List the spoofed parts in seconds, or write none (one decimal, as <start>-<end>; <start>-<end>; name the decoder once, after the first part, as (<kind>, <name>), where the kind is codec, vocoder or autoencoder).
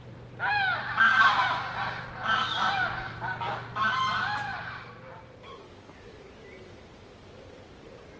none